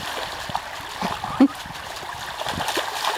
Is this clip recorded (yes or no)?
yes